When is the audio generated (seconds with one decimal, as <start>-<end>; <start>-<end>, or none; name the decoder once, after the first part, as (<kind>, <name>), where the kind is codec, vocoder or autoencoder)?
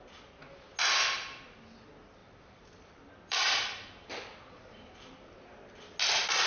2.2-5.5 (vocoder, BigVGAN v2)